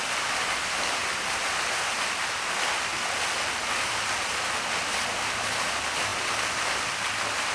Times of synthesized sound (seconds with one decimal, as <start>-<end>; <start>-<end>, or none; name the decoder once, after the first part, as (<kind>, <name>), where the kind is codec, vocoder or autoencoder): none

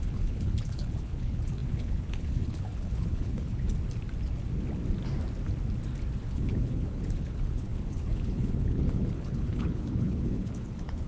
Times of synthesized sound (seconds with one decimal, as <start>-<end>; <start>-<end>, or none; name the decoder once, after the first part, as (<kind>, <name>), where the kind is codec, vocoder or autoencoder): 0.0-3.7 (codec, HILCodec); 6.2-11.1

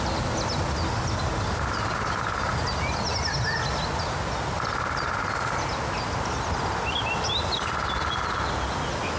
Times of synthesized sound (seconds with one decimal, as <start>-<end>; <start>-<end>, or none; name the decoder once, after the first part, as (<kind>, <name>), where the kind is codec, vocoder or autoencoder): none

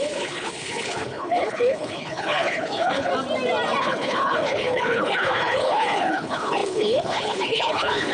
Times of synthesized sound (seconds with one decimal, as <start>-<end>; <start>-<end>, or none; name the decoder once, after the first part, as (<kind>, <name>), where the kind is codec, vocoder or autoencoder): 0.0-3.1 (codec, HILCodec); 3.8-8.1

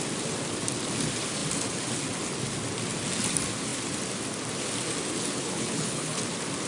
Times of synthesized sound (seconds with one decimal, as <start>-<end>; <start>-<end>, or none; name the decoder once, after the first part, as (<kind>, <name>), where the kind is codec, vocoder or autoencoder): 5.3-6.2 (codec, HILCodec)

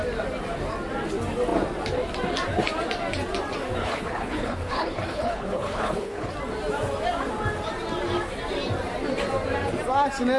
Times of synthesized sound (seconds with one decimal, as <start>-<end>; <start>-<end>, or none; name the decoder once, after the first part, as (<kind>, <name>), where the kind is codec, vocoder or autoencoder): 3.8-6.3 (codec, HILCodec)